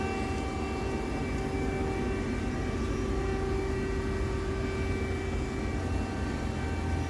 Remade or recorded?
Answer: recorded